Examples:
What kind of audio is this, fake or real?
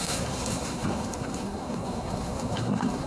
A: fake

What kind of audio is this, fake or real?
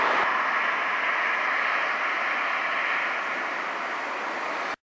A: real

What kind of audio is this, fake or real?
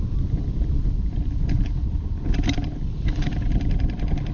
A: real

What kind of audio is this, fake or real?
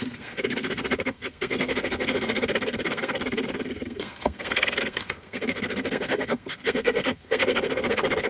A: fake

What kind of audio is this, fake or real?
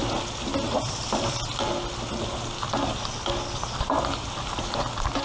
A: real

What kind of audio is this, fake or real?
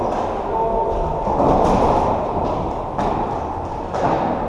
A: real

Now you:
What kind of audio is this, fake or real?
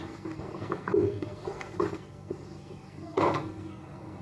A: fake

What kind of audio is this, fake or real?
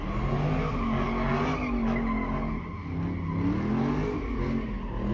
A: real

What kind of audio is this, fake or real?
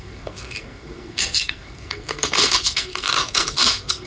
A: fake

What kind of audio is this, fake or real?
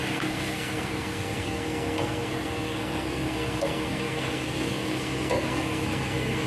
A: fake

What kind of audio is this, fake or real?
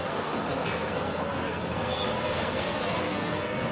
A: fake